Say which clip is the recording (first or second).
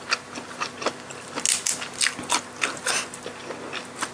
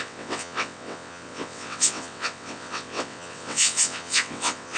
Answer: first